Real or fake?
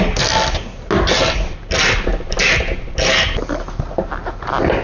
real